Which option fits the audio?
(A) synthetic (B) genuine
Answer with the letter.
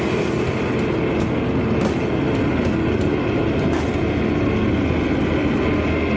B